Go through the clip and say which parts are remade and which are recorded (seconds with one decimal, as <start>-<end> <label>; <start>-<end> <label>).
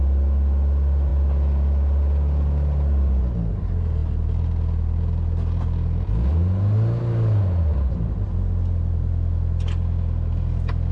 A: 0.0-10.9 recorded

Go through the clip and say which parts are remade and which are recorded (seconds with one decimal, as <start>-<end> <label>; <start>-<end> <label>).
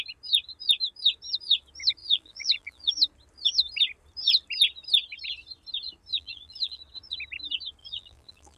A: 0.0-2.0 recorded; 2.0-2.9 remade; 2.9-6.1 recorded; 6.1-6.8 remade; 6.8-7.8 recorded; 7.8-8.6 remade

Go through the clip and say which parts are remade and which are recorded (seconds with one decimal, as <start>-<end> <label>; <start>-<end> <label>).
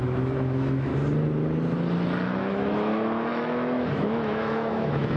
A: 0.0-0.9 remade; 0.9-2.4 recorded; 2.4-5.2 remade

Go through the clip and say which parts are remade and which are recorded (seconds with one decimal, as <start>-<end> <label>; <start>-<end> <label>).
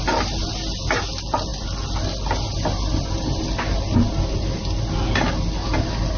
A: 0.0-6.2 recorded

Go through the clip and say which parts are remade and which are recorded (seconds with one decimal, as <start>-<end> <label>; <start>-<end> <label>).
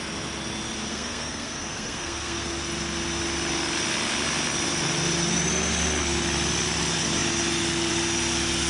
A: 0.0-0.9 recorded; 0.9-2.5 remade; 2.5-8.7 recorded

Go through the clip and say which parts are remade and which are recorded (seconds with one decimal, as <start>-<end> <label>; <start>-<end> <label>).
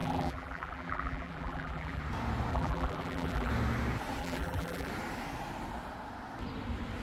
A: 0.0-2.0 remade; 2.0-2.5 recorded; 2.5-3.5 remade; 3.5-4.2 recorded; 4.2-4.9 remade; 4.9-7.0 recorded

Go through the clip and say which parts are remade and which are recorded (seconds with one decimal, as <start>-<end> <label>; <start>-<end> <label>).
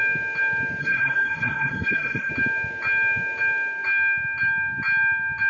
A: 0.0-0.8 recorded; 0.8-2.3 remade; 2.3-5.5 recorded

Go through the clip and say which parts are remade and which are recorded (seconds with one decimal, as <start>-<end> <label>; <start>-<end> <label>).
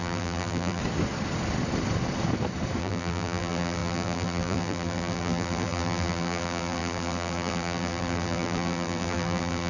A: 0.0-0.8 remade; 0.8-2.8 recorded; 2.8-9.7 remade